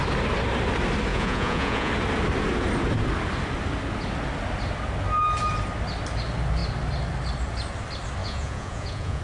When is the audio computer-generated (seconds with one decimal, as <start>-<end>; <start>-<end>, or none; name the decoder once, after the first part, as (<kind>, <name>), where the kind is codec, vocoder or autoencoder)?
1.1-1.9 (vocoder, Vocos); 8.2-9.2